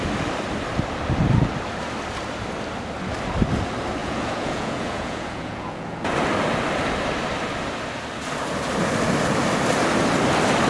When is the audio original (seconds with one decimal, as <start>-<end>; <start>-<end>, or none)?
0.0-4.0; 6.1-10.7